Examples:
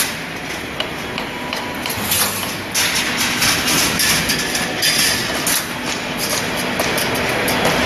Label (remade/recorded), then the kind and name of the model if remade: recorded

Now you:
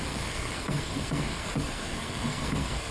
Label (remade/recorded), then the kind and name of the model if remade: remade, codec, SNAC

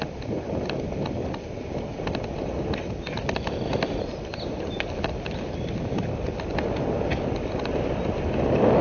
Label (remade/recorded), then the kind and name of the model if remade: recorded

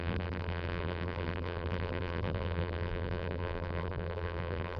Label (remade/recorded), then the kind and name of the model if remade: remade, vocoder, BigVGAN v2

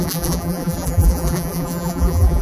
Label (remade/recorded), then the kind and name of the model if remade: remade, vocoder, BigVGAN v2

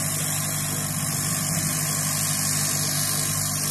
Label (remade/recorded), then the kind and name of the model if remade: recorded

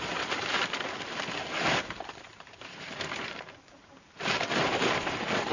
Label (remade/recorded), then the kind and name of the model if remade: remade, vocoder, BigVGAN v2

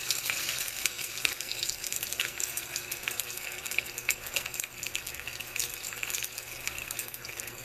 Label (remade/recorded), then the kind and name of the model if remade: remade, codec, SNAC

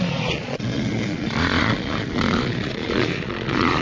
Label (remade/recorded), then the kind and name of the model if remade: remade, vocoder, Vocos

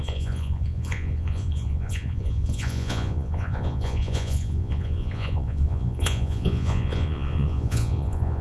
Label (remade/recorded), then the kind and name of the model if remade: remade, vocoder, Vocos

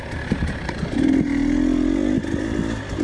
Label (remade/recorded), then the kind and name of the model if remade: recorded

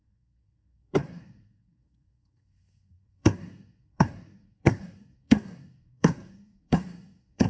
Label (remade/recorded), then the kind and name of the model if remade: remade, codec, SNAC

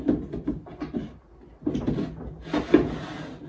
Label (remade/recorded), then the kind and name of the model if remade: recorded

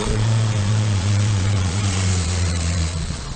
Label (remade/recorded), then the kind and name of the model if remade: remade, vocoder, Vocos